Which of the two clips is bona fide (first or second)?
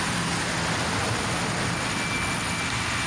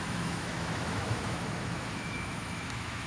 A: first